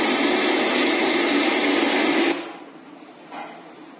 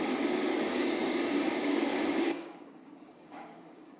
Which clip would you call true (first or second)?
first